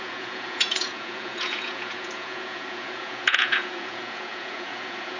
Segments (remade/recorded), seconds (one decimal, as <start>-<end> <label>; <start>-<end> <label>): 0.0-5.2 remade